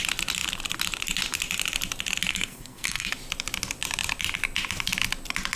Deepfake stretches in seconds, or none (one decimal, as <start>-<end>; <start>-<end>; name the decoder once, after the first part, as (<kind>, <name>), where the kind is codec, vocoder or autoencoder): 2.3-3.1 (codec, SNAC)